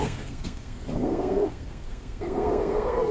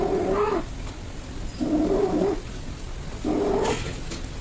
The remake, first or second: first